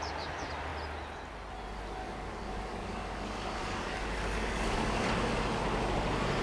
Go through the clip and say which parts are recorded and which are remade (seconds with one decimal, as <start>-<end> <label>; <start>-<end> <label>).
0.0-2.0 recorded; 2.0-5.6 remade; 5.6-6.4 recorded